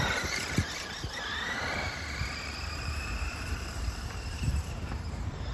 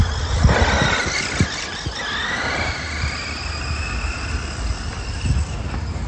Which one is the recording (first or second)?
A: second